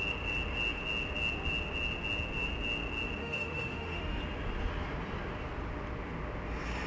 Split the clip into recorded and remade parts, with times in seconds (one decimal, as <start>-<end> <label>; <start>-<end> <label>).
0.0-3.2 recorded; 3.2-4.2 remade; 4.2-6.9 recorded